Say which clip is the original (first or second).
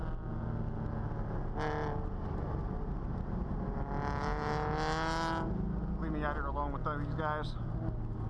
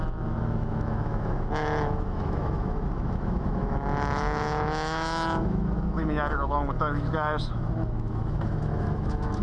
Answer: first